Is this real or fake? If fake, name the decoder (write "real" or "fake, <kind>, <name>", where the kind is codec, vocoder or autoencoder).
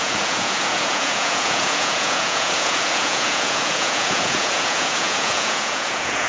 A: fake, vocoder, Vocos